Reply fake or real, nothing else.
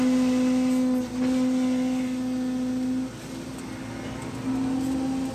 real